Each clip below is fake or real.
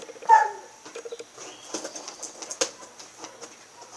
real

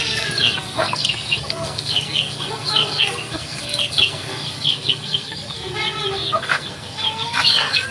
fake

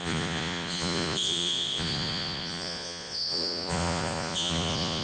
fake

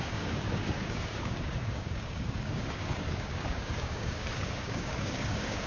fake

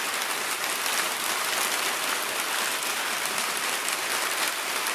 fake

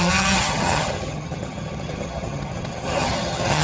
fake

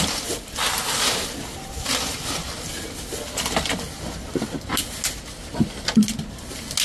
real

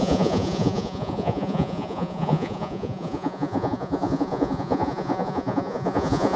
fake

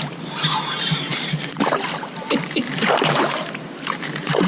fake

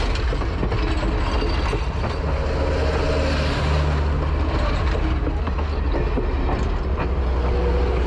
real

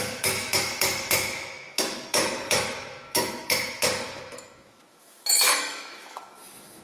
fake